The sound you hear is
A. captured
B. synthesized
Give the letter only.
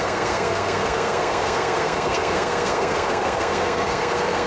B